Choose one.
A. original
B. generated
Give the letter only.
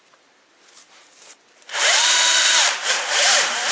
B